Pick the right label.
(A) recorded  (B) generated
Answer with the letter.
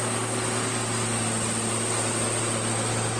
A